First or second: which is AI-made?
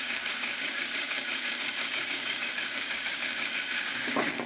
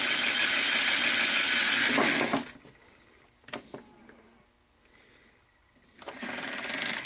first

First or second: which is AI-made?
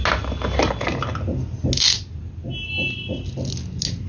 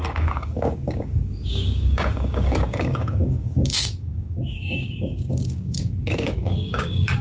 second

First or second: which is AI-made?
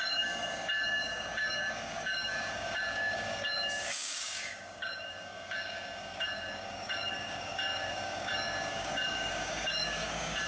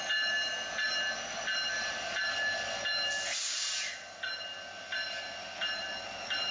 first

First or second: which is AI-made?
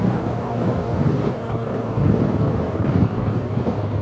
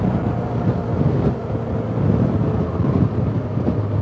first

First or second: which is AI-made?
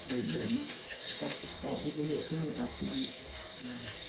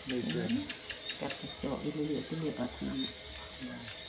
first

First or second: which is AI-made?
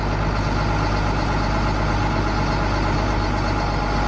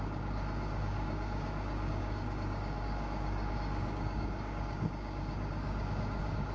second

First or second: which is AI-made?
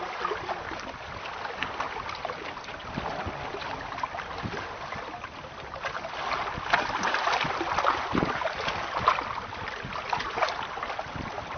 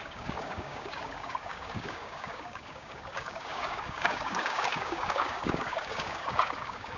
second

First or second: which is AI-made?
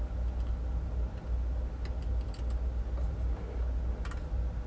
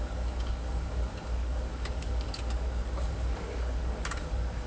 second